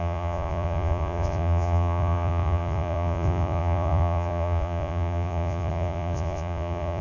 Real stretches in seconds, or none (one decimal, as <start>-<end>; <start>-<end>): none